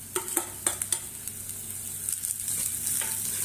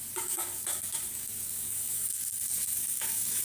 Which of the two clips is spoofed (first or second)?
second